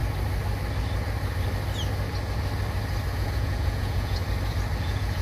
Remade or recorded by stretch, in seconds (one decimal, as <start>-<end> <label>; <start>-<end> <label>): 0.0-3.1 recorded; 3.1-4.2 remade; 4.2-4.8 recorded; 4.8-5.2 remade